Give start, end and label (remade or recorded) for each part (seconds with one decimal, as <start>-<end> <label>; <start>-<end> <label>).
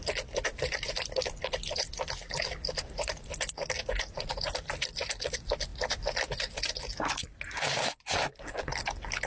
0.0-9.3 recorded